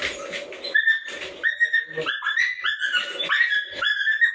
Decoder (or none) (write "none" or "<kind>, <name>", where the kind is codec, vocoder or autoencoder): none